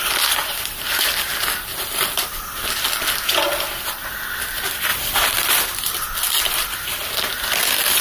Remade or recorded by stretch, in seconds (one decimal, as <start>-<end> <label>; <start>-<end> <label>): 0.0-8.0 recorded